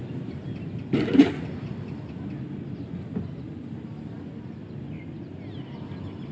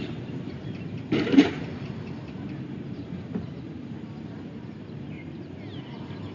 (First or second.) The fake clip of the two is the second